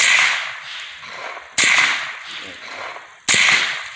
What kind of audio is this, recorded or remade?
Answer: recorded